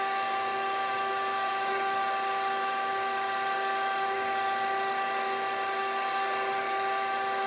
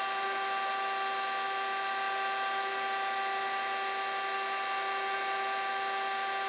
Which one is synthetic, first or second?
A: first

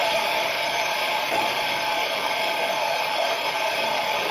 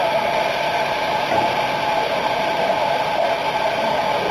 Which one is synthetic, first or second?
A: first